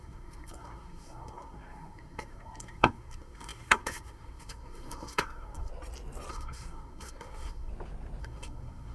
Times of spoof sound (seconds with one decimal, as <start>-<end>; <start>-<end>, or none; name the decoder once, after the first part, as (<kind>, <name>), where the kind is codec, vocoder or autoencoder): 0.0-5.7 (codec, SNAC); 6.3-7.7; 8.2-8.9